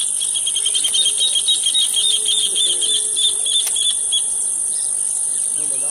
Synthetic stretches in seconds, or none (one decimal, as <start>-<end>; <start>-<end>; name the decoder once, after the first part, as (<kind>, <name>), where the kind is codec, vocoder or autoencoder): 2.0-2.6 (vocoder, Vocos)